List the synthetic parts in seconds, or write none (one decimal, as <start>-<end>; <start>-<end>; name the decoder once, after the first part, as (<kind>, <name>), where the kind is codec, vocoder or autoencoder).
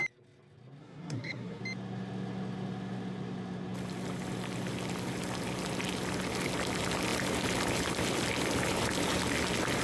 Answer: 0.8-1.6 (codec, SNAC)